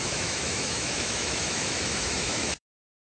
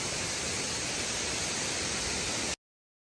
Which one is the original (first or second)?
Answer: second